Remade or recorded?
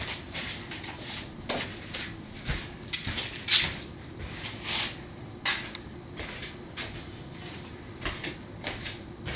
recorded